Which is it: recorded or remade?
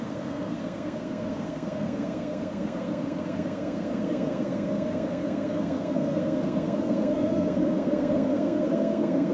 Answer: remade